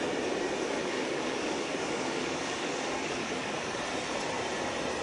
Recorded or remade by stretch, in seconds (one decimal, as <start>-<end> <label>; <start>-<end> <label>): 0.0-0.8 recorded; 0.8-3.8 remade; 3.8-5.0 recorded